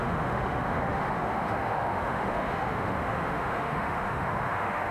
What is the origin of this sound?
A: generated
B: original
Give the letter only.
A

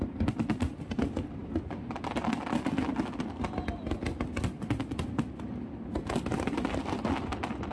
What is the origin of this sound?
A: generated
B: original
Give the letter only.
B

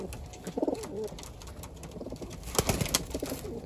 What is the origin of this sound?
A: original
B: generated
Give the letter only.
A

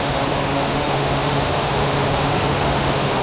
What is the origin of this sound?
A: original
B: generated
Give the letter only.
B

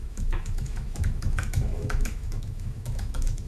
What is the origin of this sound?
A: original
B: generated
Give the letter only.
B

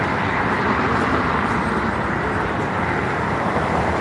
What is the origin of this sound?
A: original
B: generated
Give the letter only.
A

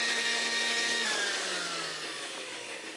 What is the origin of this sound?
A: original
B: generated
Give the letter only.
B